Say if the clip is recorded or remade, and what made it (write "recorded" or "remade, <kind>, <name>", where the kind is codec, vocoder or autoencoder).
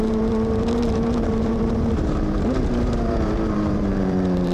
remade, vocoder, BigVGAN v2